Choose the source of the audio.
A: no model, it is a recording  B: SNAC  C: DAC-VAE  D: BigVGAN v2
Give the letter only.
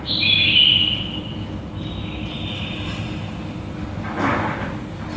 A